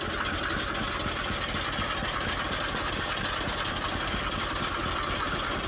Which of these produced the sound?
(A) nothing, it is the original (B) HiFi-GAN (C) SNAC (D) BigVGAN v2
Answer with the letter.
A